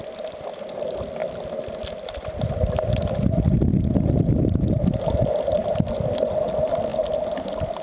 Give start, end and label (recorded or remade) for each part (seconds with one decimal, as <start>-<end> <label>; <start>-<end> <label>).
0.0-7.8 recorded